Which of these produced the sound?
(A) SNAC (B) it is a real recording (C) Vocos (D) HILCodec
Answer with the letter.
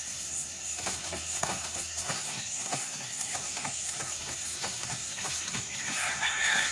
A